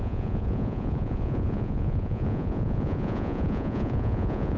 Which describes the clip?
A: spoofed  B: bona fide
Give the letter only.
A